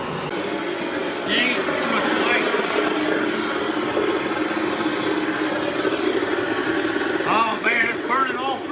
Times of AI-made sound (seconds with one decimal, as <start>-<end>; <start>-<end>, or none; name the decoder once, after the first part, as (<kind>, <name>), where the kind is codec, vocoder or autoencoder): 7.5-8.1 (vocoder, WaveNeXt)